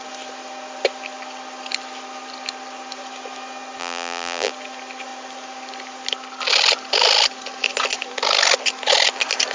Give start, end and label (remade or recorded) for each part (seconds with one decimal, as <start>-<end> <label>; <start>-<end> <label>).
0.0-3.8 recorded; 3.8-4.5 remade; 4.5-9.5 recorded